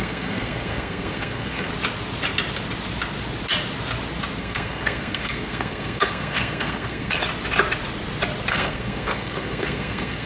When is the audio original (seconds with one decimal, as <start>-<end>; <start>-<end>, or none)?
1.7-4.4; 7.2-8.5